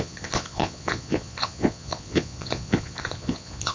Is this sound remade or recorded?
remade